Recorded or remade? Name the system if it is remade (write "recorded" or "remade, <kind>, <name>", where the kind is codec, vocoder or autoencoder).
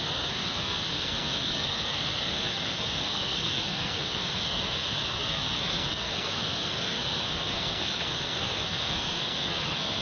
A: remade, codec, SNAC